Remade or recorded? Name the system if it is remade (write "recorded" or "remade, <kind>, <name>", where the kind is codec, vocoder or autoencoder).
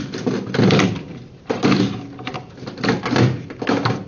recorded